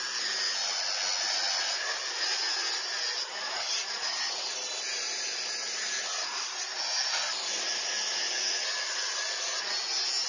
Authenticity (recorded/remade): recorded